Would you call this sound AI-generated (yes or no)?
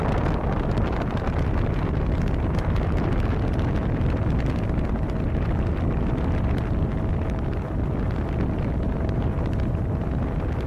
no